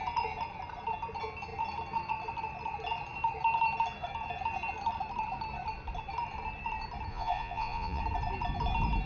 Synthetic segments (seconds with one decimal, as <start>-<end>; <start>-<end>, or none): 7.1-8.0